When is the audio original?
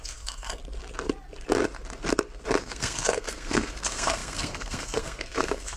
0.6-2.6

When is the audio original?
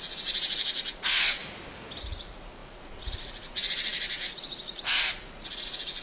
1.4-2.0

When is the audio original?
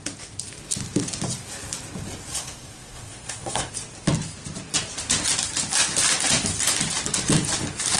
0.0-2.3; 3.7-8.0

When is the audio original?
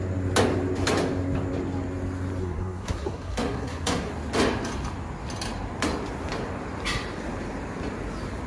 0.0-2.4; 4.1-8.5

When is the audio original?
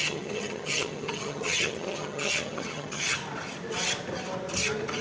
3.2-5.0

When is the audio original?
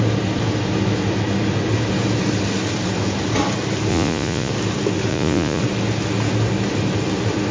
0.0-3.9; 4.5-5.1; 5.6-7.5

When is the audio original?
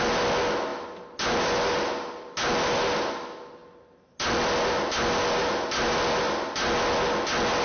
0.0-7.6